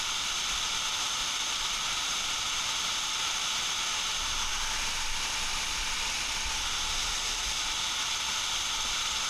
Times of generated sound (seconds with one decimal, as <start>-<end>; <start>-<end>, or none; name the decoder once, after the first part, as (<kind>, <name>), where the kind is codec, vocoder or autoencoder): 1.2-1.8 (vocoder, BigVGAN v2)